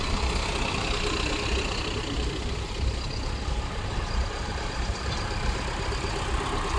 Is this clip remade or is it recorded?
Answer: recorded